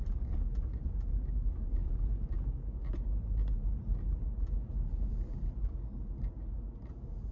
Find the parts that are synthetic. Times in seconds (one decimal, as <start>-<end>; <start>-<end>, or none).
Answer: 0.0-2.1; 4.9-6.4